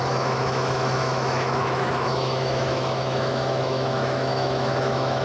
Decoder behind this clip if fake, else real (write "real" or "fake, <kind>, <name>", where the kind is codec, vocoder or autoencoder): fake, autoencoder, DAC-VAE